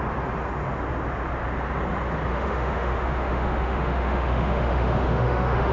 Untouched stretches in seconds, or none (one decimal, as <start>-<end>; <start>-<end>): 0.0-2.3